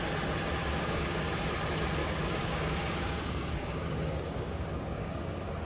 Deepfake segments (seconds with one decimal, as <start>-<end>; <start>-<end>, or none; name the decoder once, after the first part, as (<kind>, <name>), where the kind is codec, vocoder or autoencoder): 0.6-1.2 (codec, DAC); 2.0-5.6